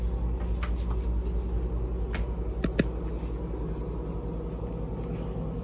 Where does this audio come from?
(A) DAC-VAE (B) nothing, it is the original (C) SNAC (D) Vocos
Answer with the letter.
B